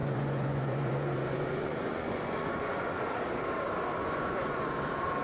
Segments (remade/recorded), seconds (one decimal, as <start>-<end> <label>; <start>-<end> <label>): 0.0-3.0 remade; 3.0-4.0 recorded; 4.0-4.7 remade; 4.7-5.2 recorded